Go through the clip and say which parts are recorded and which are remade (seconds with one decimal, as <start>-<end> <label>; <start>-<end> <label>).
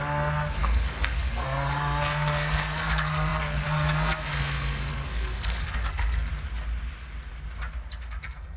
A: 0.0-6.3 remade; 6.3-8.2 recorded; 8.2-8.6 remade